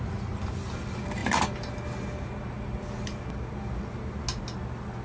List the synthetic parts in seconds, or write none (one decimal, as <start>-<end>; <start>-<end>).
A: none